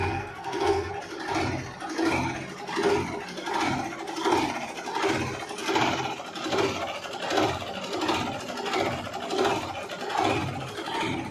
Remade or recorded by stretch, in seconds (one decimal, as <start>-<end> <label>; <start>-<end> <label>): 0.0-0.9 remade; 0.9-11.3 recorded